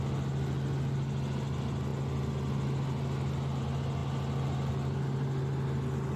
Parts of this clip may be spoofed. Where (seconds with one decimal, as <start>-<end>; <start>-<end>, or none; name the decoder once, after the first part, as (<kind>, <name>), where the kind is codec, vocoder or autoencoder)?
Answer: none